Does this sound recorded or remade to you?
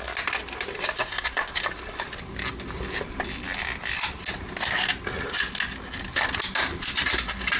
recorded